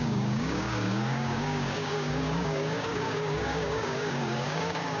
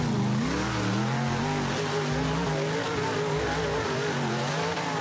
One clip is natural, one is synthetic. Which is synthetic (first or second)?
first